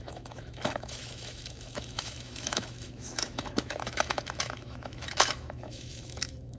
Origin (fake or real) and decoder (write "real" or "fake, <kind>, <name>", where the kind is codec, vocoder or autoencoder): fake, autoencoder, DAC-VAE